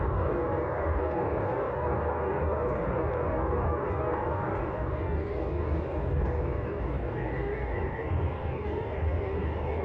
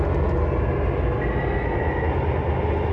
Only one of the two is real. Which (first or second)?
second